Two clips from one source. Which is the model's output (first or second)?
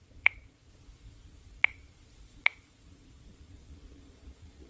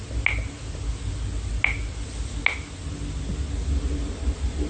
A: first